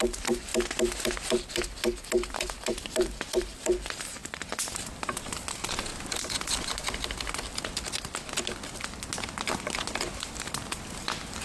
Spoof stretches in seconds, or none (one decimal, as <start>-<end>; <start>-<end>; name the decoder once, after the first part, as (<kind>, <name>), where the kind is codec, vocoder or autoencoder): 0.0-0.5 (vocoder, BigVGAN v2); 2.0-5.9; 10.0-11.4